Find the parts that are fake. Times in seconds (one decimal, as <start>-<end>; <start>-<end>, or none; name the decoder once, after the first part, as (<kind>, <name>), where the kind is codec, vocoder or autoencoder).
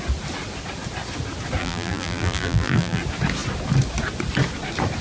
1.6-3.0 (vocoder, BigVGAN v2)